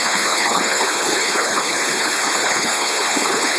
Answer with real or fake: fake